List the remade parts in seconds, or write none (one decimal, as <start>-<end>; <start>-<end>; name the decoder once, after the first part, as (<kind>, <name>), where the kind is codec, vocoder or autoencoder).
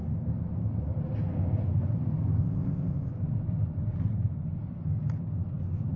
2.4-3.1 (codec, ZipCodec)